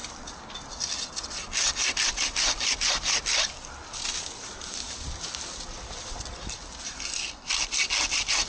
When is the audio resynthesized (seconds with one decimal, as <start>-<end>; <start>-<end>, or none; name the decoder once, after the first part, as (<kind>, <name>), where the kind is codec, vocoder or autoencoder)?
none